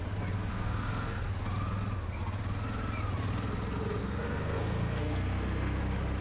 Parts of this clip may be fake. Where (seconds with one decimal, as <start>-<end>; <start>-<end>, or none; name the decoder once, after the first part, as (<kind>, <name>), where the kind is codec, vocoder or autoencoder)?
0.5-1.3 (codec, SNAC); 4.0-5.8